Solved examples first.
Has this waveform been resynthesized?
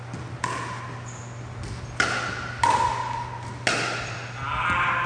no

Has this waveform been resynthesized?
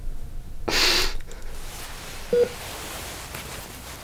no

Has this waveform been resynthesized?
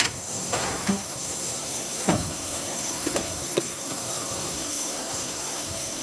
yes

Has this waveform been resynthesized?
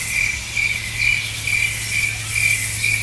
no